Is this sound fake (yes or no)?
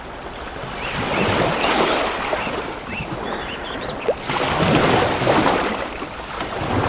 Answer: no